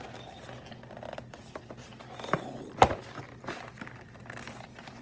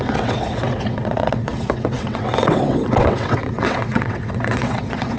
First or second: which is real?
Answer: first